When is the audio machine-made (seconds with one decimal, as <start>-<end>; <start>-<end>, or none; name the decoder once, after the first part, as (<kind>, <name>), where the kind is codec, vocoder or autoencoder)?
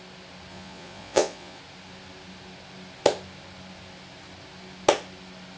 0.5-1.6 (vocoder, Vocos)